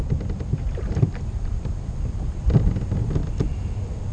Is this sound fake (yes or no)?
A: no